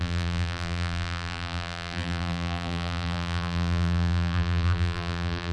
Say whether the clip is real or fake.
fake